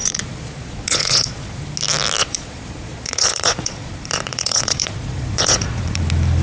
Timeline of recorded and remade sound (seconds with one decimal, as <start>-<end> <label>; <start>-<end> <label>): 0.0-1.6 remade; 1.6-2.2 recorded; 2.2-6.0 remade; 6.0-6.4 recorded